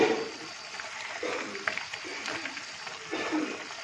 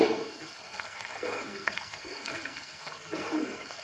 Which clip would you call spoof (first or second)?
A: second